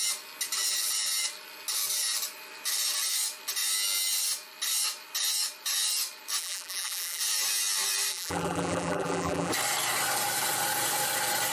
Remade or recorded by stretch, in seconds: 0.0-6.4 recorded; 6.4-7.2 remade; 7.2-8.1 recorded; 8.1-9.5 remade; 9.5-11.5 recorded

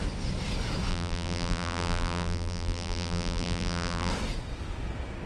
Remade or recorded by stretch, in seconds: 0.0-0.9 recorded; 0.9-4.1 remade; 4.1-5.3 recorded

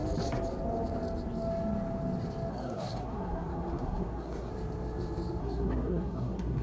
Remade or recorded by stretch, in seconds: 0.0-2.5 recorded; 2.5-4.5 remade; 4.5-5.4 recorded; 5.4-6.6 remade